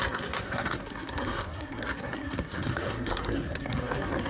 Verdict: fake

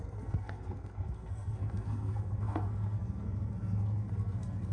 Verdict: fake